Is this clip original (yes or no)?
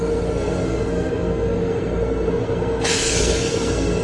no